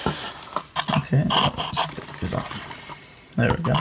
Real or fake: real